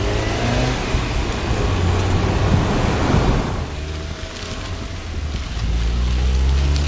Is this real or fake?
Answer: real